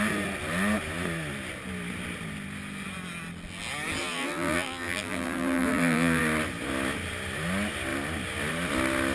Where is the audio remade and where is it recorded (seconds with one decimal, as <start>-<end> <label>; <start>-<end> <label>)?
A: 0.0-4.0 recorded; 4.0-6.2 remade; 6.2-9.1 recorded